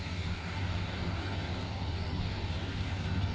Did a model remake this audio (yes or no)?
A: yes